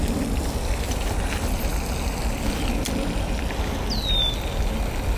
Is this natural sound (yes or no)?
yes